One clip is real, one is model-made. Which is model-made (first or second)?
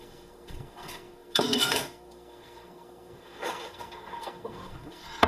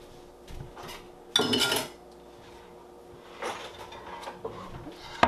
first